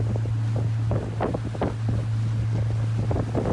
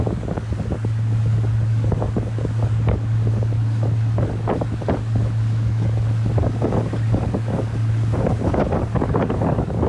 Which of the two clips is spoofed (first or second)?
second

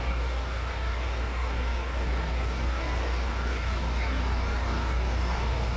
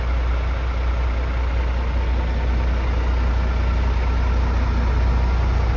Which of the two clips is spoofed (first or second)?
first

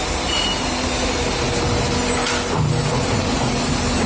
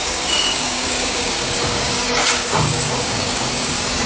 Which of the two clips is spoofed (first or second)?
second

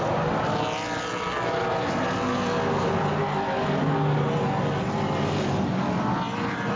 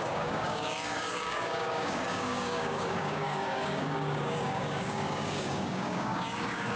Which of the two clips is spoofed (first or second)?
second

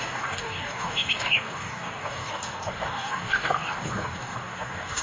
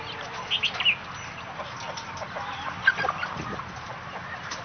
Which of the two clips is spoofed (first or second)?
first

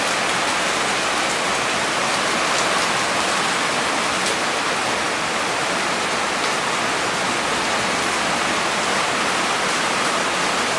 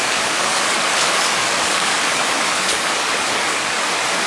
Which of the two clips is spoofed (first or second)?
second